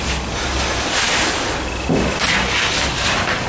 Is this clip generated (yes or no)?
no